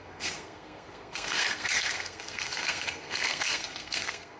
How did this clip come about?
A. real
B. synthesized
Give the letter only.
B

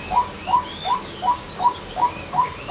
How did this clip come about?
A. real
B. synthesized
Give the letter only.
B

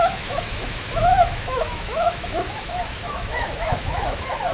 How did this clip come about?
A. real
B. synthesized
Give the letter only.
B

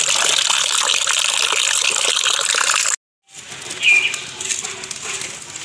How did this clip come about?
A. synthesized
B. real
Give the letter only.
B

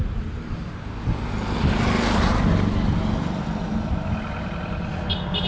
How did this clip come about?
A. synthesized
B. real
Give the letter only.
B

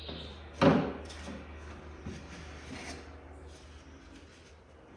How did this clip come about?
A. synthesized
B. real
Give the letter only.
B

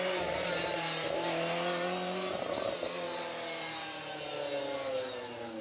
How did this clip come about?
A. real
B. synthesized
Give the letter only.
A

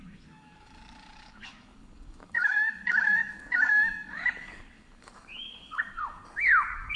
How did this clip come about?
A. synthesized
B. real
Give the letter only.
A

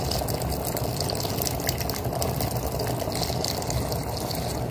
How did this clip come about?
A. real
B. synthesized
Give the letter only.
A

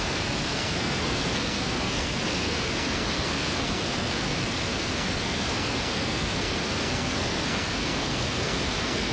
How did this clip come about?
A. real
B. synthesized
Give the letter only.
B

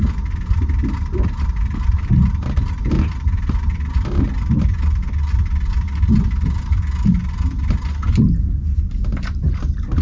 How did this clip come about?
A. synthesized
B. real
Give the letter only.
B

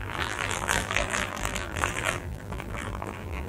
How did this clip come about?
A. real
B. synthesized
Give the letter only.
B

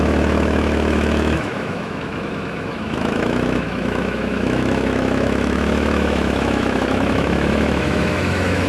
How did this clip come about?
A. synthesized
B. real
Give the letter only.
A